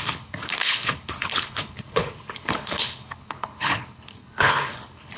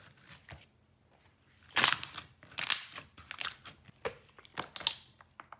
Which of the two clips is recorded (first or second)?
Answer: second